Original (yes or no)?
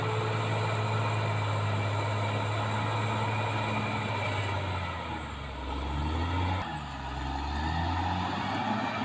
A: yes